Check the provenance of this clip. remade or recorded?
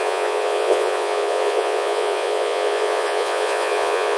remade